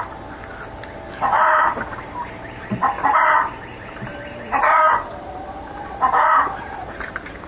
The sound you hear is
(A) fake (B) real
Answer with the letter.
A